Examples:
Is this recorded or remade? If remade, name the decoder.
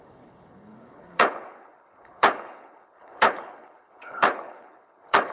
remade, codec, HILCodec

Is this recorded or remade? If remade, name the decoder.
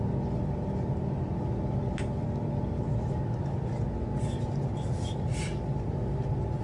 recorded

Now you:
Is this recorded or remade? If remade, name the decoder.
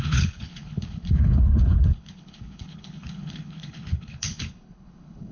remade, codec, HILCodec